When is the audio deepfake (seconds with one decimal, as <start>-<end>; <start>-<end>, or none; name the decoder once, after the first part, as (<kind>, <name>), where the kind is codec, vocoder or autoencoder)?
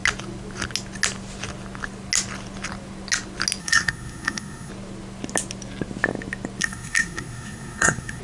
3.6-4.7 (codec, SNAC); 6.6-8.2